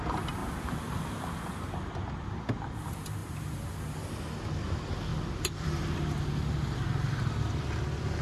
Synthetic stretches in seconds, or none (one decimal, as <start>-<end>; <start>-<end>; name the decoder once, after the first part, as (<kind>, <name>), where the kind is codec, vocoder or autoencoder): 3.2-3.7 (vocoder, BigVGAN v2); 5.1-6.2